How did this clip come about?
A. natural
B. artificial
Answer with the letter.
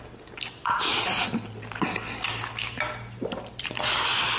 A